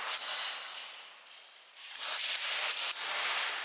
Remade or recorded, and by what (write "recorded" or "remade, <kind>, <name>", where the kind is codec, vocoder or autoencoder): remade, vocoder, BigVGAN v2